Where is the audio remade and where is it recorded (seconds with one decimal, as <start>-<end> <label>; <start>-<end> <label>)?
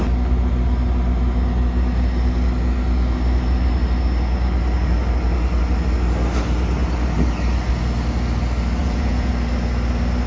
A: 0.0-8.8 recorded; 8.8-9.3 remade; 9.3-10.3 recorded